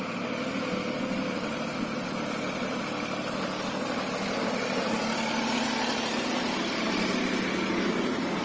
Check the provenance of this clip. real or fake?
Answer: real